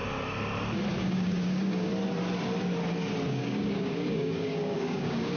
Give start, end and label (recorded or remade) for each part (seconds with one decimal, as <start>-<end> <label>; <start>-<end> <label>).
0.0-0.9 recorded; 0.9-1.9 remade; 1.9-3.3 recorded; 3.3-5.4 remade